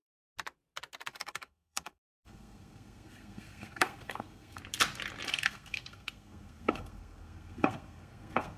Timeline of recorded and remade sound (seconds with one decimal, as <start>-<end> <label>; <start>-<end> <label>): 0.0-1.1 recorded; 1.1-4.6 remade; 4.6-5.3 recorded; 5.3-8.6 remade